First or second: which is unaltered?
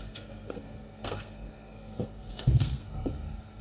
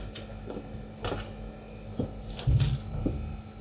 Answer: second